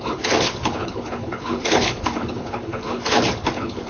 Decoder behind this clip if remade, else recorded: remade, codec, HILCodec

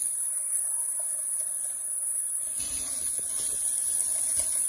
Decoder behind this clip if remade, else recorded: recorded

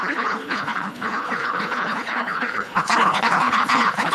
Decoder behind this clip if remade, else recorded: remade, codec, HILCodec